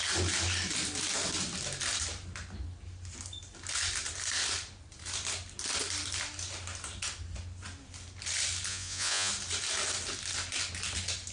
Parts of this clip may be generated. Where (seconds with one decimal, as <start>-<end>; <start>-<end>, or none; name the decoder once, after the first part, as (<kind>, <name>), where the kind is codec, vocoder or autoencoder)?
8.7-9.3 (vocoder, Vocos)